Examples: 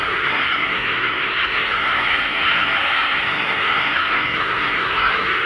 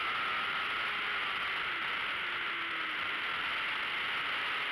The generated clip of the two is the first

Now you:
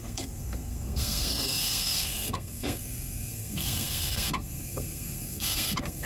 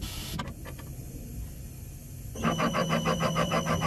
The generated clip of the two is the first